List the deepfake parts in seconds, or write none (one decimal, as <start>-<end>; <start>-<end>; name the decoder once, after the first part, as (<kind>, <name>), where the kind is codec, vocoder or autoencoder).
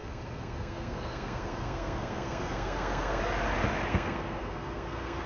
0.0-3.2 (codec, SNAC); 3.9-5.3